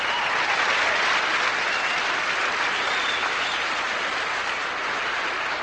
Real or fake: real